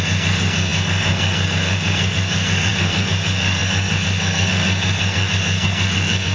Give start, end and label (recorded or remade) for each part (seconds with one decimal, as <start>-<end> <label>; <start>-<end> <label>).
0.0-6.3 remade